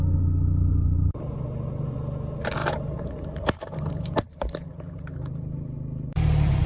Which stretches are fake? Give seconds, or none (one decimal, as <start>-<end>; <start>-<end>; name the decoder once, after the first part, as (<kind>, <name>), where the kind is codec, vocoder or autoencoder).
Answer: 0.8-1.9 (vocoder, BigVGAN v2); 2.6-6.7